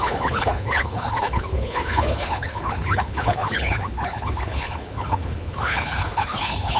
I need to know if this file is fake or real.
fake